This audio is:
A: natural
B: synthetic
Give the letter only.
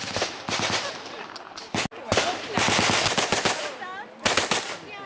A